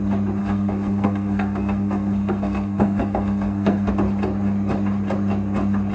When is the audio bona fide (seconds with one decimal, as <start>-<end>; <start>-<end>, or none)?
0.0-0.4; 3.9-5.9

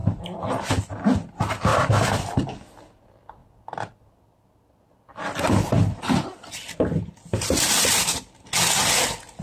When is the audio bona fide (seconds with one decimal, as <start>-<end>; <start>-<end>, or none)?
0.0-9.4

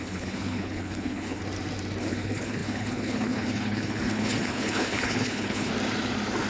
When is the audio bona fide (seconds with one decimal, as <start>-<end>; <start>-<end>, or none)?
1.4-2.0; 5.7-6.5

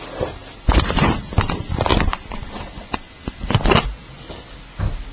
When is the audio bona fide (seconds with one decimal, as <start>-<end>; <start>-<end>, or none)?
0.0-5.1

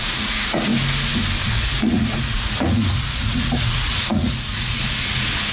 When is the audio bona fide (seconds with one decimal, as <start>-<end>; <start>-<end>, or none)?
0.7-1.5

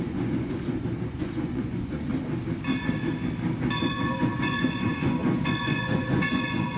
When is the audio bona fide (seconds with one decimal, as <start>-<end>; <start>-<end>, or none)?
2.1-3.8

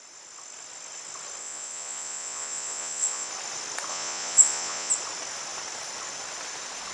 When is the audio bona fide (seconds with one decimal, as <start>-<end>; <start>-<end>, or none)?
0.0-1.4; 3.3-3.9; 4.9-6.9

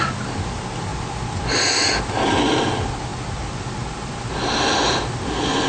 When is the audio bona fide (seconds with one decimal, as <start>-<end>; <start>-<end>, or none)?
0.0-5.7